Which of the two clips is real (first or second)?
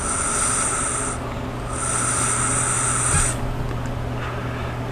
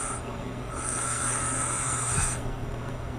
first